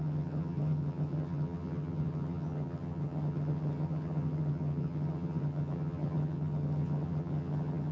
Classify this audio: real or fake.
fake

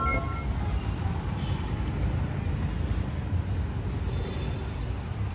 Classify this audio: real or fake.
real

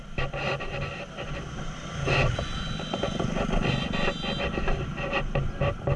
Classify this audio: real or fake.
real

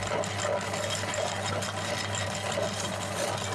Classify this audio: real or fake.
real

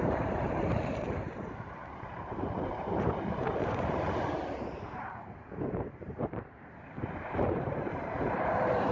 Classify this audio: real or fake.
fake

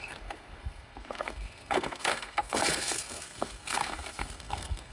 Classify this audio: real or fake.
fake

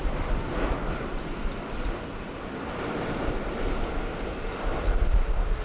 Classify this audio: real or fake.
real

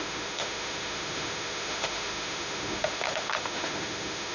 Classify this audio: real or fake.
fake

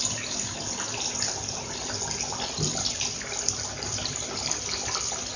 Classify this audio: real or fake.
real